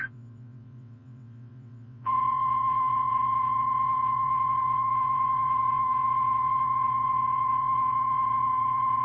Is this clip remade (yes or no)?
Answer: yes